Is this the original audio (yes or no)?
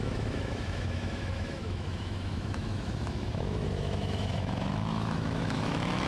no